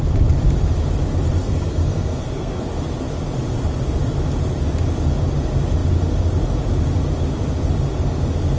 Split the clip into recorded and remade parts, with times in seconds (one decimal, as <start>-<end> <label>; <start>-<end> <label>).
0.0-1.4 recorded; 1.4-2.7 remade; 2.7-8.6 recorded